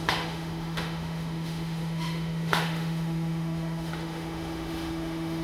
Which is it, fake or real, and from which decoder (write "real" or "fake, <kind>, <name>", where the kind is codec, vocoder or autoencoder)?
fake, autoencoder, DAC-VAE